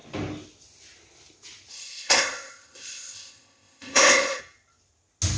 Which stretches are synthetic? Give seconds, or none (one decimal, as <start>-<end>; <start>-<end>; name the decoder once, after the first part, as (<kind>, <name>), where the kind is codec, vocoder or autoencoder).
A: 1.7-4.4 (codec, ZipCodec)